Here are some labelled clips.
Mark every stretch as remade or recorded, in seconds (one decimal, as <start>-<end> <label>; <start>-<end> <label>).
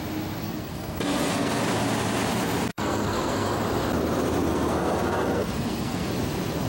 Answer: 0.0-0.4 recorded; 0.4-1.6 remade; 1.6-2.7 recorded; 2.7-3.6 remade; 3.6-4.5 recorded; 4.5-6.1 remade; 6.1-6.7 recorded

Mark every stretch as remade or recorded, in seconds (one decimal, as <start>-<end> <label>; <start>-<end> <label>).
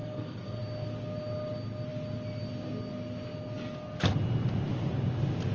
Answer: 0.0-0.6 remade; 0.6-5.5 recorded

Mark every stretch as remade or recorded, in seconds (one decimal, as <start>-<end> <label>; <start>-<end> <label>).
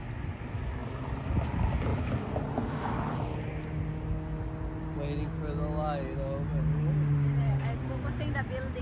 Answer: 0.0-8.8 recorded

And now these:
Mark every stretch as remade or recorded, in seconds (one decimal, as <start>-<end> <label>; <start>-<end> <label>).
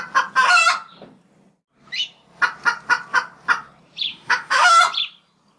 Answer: 0.0-4.1 recorded; 4.1-4.8 remade; 4.8-5.6 recorded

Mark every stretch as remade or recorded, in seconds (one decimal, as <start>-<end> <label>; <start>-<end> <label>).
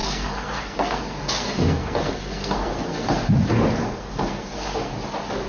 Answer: 0.0-3.3 remade; 3.3-3.8 recorded; 3.8-4.9 remade; 4.9-5.5 recorded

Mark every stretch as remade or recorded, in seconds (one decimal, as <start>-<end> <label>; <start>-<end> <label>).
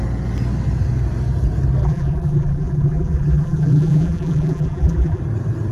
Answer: 0.0-1.8 recorded; 1.8-5.2 remade; 5.2-5.7 recorded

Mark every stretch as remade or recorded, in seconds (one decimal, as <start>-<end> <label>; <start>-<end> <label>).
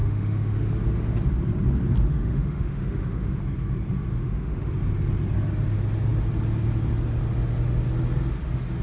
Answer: 0.0-0.7 remade; 0.7-2.1 recorded; 2.1-3.4 remade; 3.4-4.1 recorded; 4.1-4.7 remade; 4.7-8.8 recorded